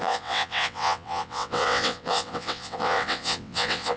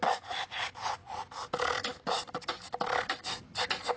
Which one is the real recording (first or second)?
second